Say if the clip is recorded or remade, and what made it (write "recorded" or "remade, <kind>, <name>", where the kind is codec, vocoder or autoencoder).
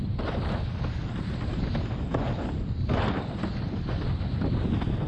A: recorded